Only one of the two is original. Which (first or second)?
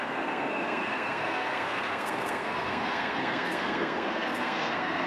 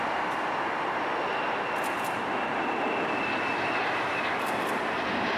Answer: second